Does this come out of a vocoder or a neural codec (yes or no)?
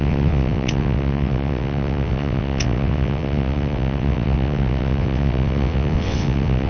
yes